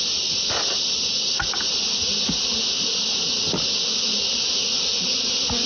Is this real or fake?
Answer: real